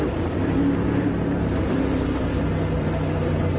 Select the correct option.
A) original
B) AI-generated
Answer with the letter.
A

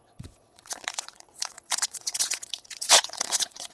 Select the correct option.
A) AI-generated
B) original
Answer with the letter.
A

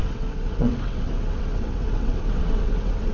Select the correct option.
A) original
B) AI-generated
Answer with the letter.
B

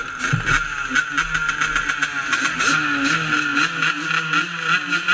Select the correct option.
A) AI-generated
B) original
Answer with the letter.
B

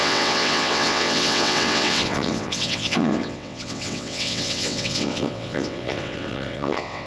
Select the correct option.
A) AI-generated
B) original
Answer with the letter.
A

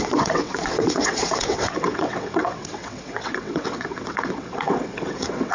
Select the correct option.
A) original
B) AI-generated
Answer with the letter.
B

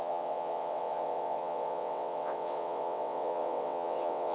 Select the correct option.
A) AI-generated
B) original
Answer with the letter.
A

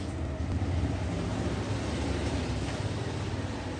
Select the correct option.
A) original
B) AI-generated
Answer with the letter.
A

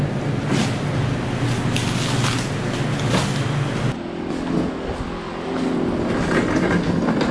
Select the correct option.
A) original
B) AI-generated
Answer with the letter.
A